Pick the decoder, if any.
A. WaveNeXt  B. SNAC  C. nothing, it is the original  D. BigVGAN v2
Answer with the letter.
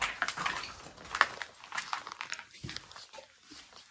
C